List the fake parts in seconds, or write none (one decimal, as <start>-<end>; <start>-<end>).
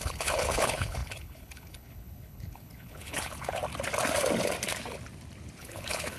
0.0-3.6; 5.6-6.2